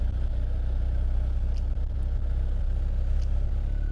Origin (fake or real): real